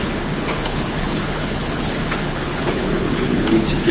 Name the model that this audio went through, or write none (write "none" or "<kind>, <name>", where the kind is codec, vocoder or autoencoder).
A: codec, HILCodec